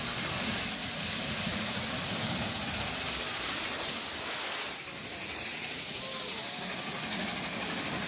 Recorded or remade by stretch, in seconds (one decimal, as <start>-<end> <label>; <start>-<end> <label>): 0.0-0.8 recorded; 0.8-1.9 remade; 1.9-5.2 recorded; 5.2-6.0 remade; 6.0-8.1 recorded